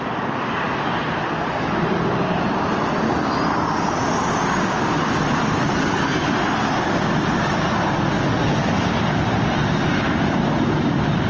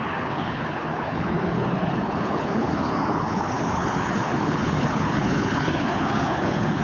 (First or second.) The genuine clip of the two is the first